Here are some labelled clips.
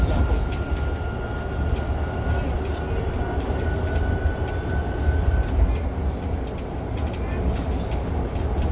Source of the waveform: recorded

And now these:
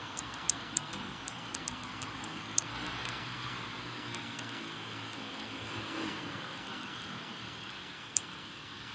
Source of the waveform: remade